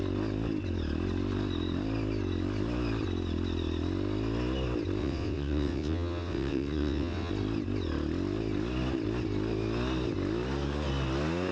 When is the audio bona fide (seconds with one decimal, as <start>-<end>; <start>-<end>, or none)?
0.0-5.0; 7.3-11.5